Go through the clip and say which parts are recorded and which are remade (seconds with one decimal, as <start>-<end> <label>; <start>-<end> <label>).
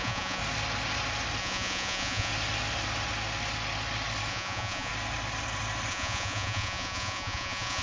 0.0-0.4 remade; 0.4-1.4 recorded; 1.4-2.3 remade; 2.3-4.3 recorded; 4.3-4.9 remade; 4.9-5.9 recorded; 5.9-7.8 remade